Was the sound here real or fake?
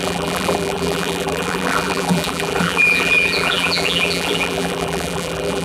fake